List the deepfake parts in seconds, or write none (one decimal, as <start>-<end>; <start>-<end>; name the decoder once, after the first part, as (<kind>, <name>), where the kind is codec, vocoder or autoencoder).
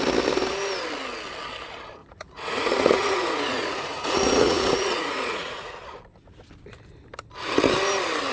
2.0-5.7 (vocoder, Vocos)